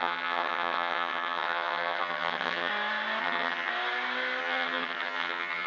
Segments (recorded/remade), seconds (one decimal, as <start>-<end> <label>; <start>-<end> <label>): 0.0-2.7 remade; 2.7-3.2 recorded; 3.2-3.7 remade; 3.7-4.4 recorded; 4.4-5.7 remade